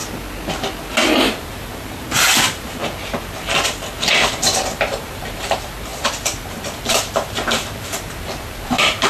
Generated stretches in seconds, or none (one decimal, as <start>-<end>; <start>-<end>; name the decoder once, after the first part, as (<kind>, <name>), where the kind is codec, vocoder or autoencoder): 1.3-2.8 (vocoder, BigVGAN v2); 4.3-9.1